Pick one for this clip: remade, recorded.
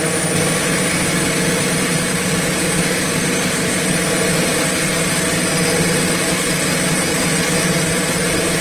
recorded